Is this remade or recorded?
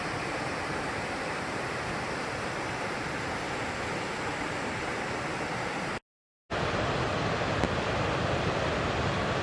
recorded